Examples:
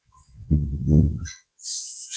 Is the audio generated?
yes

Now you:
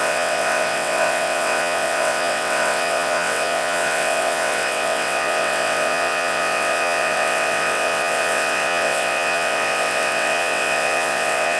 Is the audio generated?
yes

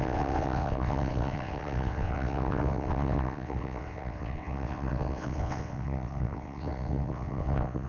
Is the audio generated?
yes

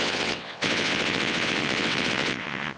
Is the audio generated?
yes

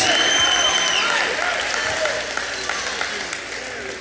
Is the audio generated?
no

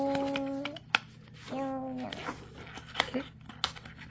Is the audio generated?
no